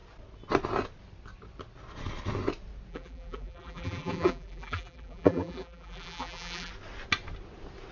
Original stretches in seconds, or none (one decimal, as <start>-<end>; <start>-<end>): 0.0-2.9; 6.7-7.9